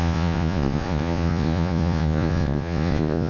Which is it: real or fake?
fake